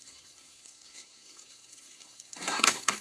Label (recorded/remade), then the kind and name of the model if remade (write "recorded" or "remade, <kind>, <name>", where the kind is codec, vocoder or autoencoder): remade, codec, SNAC